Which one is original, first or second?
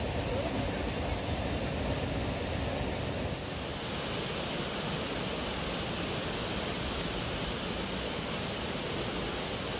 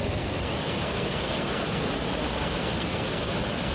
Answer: first